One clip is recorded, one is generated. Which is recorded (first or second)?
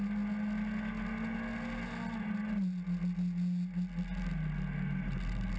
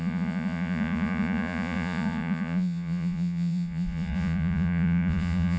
first